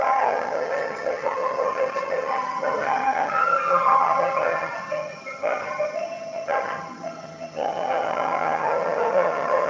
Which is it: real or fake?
fake